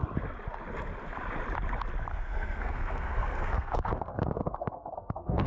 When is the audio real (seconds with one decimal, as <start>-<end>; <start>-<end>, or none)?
0.0-2.1